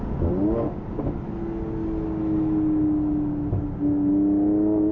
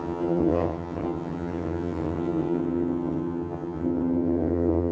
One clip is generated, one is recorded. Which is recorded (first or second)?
first